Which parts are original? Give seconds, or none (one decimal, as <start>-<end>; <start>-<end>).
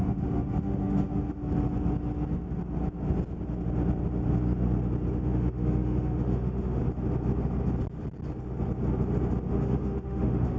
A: 1.4-5.2; 6.8-9.5